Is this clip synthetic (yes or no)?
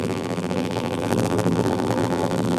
yes